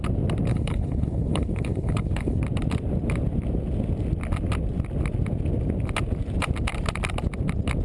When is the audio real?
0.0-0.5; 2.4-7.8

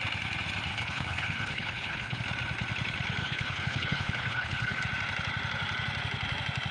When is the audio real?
0.0-0.7; 2.2-3.2; 4.8-6.7

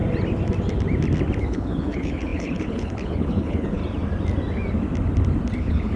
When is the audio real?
0.0-1.4; 3.8-5.6

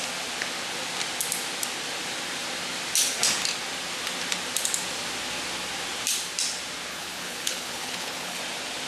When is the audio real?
0.0-6.9; 8.4-8.9

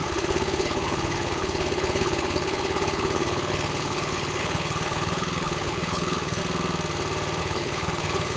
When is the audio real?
6.4-7.4

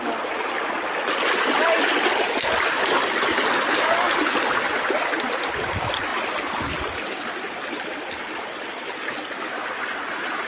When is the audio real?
0.0-10.5

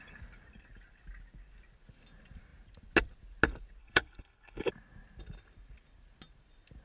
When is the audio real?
0.0-3.8; 4.7-6.8

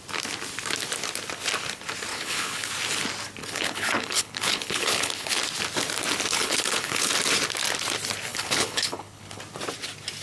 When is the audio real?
0.0-2.1; 2.7-3.4; 5.4-6.3; 7.1-8.3; 9.4-10.2